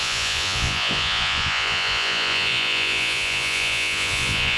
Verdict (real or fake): fake